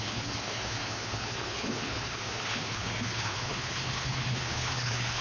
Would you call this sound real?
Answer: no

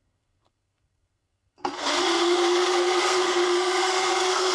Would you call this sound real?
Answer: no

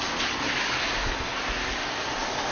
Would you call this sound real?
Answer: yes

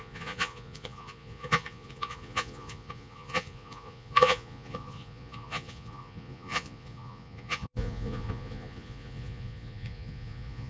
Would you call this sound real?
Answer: no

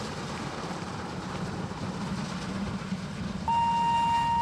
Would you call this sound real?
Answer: yes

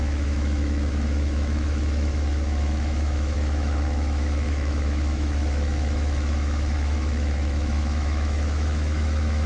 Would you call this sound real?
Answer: no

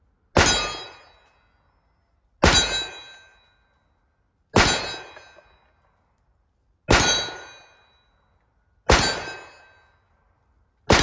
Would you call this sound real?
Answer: yes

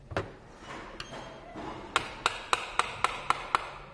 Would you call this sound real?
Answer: yes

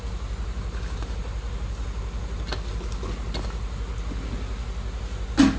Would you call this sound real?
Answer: yes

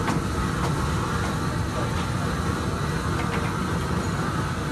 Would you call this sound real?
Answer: yes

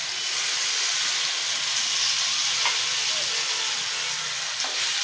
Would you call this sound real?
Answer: yes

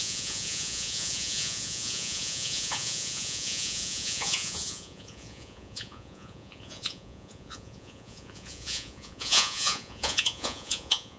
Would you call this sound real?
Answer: no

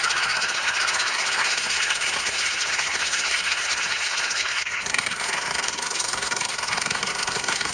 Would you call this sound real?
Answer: no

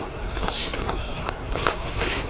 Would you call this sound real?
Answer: no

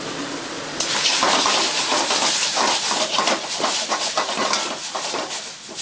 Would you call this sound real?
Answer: yes